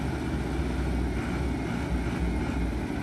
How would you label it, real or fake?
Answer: real